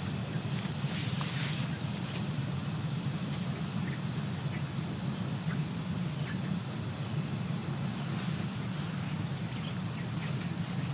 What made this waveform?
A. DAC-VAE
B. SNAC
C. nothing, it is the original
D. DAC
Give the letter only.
C